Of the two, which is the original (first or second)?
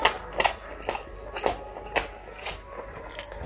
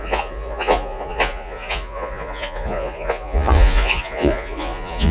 first